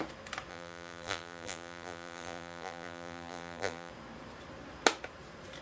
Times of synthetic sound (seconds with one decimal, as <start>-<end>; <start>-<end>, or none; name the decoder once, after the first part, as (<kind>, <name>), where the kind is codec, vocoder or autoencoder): 0.5-3.9 (vocoder, BigVGAN v2)